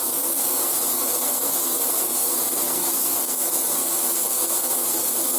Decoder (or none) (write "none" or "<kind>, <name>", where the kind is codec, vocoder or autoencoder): codec, SNAC